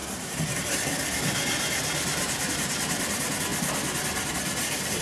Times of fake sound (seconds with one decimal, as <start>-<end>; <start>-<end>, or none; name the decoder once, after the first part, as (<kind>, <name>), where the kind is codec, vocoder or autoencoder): 0.0-0.7 (vocoder, BigVGAN v2); 2.1-2.8

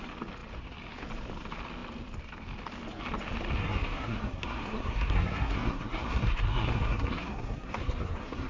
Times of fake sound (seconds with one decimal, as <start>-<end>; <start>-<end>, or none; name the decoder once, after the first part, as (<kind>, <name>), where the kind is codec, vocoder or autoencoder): 3.6-8.5 (codec, SNAC)

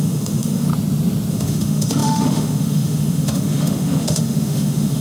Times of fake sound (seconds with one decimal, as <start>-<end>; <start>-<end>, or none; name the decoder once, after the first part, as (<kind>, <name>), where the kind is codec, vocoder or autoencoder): 0.0-0.7 (autoencoder, DAC-VAE); 1.3-5.0

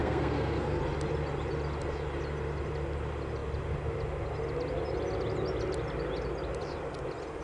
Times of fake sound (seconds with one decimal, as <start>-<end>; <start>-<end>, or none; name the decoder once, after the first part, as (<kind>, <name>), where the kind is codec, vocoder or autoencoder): 0.0-0.8 (codec, SNAC)

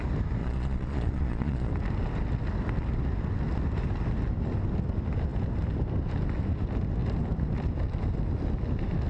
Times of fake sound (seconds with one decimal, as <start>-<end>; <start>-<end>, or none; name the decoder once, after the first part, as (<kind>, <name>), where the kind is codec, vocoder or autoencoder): 0.4-1.7 (vocoder, Vocos)

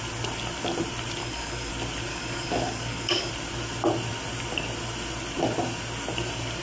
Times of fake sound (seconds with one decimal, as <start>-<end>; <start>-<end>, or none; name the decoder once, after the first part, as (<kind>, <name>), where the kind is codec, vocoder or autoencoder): 1.2-1.7 (codec, DAC); 2.1-3.3

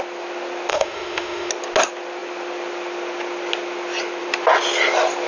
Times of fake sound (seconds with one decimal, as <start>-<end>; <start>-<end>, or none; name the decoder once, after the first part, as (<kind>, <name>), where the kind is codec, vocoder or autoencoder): 0.7-1.5 (autoencoder, DAC-VAE)